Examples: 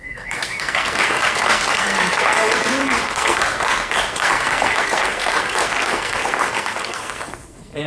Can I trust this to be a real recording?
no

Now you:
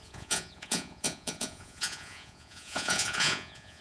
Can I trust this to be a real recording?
no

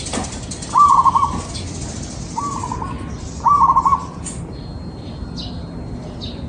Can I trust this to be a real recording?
yes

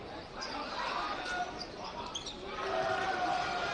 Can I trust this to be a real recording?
no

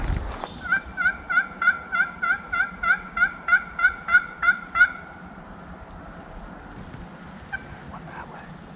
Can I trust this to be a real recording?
yes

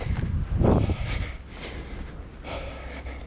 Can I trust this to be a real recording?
yes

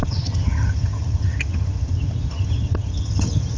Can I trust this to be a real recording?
no